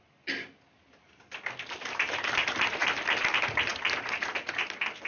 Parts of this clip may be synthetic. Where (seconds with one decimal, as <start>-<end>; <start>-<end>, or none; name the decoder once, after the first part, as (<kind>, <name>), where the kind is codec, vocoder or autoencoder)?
none